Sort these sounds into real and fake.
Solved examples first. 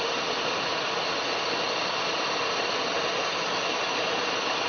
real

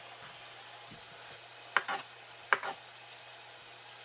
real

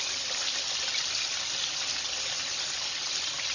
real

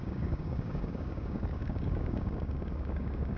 fake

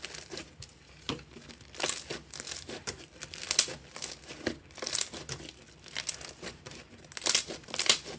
real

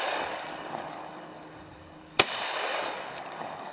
fake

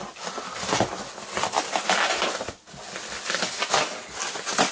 real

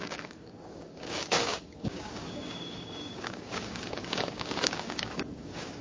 fake